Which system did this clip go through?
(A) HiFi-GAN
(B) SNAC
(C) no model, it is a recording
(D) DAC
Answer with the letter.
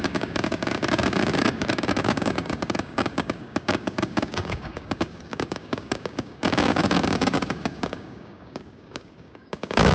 D